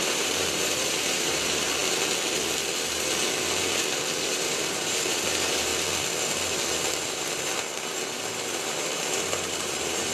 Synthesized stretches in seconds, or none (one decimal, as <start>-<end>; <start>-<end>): 0.0-1.8; 4.3-5.7; 6.8-10.1

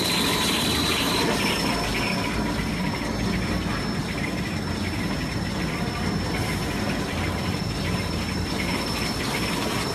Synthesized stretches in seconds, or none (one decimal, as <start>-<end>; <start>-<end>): 0.0-1.9; 6.8-9.9

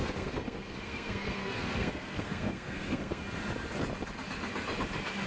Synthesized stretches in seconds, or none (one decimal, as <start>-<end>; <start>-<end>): 0.0-3.2

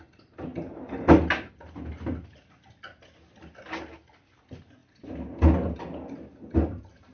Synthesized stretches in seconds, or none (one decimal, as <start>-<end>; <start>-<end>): none

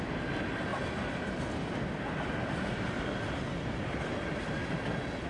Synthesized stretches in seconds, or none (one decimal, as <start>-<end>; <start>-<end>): none

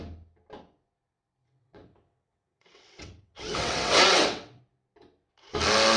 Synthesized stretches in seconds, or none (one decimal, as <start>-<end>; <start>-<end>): 1.4-4.6